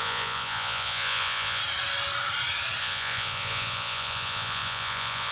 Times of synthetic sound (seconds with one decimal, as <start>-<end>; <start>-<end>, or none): 0.0-1.6; 2.8-5.3